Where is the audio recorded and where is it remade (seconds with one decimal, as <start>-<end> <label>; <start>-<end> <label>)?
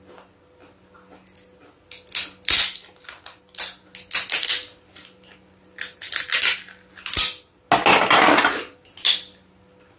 0.0-10.0 recorded